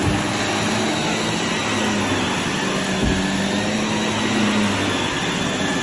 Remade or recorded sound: recorded